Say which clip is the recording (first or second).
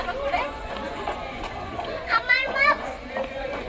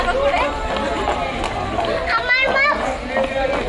second